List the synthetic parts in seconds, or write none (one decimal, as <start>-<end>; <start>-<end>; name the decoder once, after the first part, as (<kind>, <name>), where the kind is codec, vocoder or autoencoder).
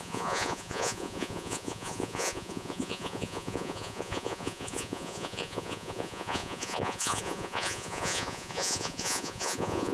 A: 0.0-9.9 (vocoder, Vocos)